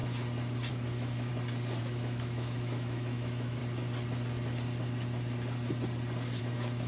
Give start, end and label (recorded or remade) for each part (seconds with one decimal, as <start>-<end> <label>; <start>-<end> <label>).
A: 0.0-0.7 recorded; 0.7-1.3 remade; 1.3-1.8 recorded; 1.8-3.6 remade; 3.6-6.4 recorded; 6.4-6.9 remade